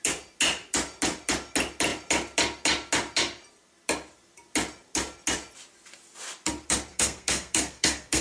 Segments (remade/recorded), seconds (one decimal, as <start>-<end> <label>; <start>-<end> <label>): 0.0-6.9 recorded; 6.9-8.2 remade